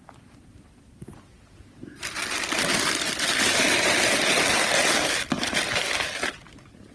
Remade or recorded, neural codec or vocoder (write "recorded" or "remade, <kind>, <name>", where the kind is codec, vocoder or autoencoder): recorded